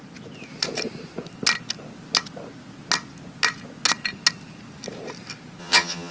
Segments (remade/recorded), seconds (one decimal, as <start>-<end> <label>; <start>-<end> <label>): 0.0-5.6 recorded; 5.6-6.1 remade